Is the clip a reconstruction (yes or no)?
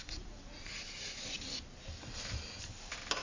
no